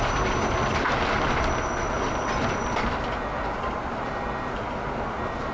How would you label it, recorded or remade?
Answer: recorded